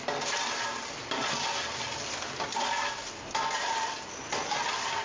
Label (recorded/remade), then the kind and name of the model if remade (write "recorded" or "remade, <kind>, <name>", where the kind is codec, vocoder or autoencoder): recorded